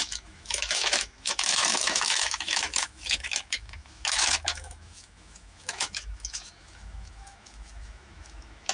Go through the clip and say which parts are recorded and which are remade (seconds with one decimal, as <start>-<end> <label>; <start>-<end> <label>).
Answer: 0.0-8.7 remade